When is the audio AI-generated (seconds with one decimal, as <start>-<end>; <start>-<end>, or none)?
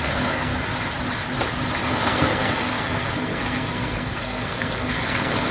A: 0.0-0.5; 1.9-5.5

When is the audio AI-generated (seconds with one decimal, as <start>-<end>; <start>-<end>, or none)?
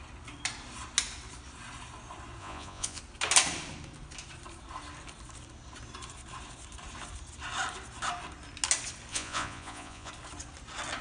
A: 2.4-3.0; 9.1-10.1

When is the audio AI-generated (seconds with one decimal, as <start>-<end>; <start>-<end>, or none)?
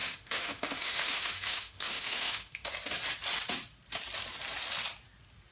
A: 0.0-2.7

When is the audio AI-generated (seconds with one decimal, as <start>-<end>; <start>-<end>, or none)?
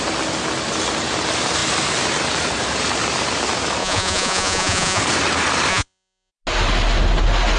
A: 3.8-5.0; 5.7-6.3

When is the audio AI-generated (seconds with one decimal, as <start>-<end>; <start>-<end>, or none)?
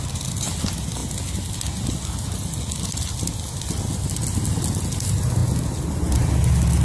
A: none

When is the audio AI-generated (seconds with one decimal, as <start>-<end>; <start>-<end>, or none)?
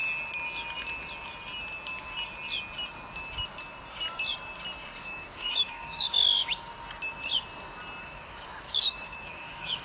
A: 5.0-6.7; 8.0-9.8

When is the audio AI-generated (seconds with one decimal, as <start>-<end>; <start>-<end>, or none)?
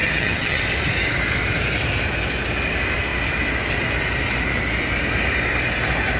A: 0.0-0.6